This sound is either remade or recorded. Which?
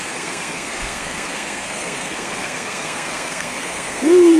remade